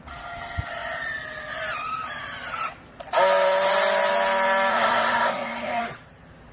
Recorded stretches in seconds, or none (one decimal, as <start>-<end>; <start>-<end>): 0.0-4.7; 5.8-6.5